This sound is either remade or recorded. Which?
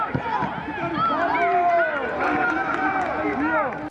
recorded